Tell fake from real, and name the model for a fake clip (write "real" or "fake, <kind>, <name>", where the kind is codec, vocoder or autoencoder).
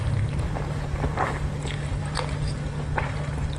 fake, vocoder, BigVGAN v2